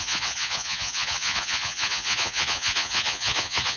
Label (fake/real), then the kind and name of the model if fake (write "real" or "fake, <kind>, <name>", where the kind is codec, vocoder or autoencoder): fake, vocoder, Vocos